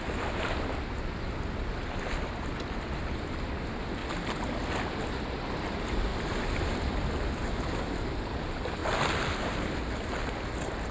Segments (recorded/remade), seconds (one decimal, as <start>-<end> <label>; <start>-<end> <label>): 0.0-10.9 recorded